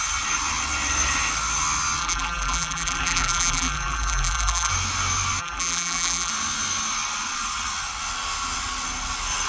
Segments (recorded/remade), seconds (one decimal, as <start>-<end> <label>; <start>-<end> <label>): 0.0-2.0 recorded; 2.0-4.7 remade; 4.7-5.4 recorded; 5.4-6.3 remade; 6.3-9.5 recorded